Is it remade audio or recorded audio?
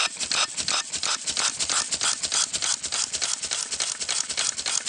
recorded